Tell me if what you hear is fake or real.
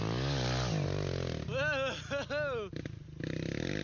real